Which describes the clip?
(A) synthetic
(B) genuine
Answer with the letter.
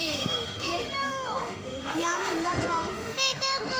A